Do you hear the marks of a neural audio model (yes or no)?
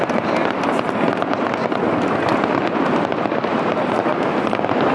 no